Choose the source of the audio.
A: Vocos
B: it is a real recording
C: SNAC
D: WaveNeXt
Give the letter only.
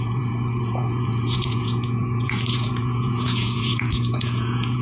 A